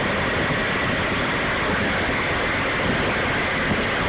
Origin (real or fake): real